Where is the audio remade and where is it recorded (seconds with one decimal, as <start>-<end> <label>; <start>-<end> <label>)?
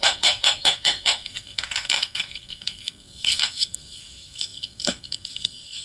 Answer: 0.0-5.8 remade